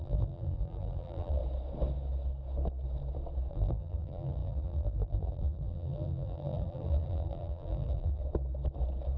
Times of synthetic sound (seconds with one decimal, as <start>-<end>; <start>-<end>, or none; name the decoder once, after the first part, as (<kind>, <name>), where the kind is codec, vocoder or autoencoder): 0.0-1.4 (vocoder, BigVGAN v2); 3.5-8.2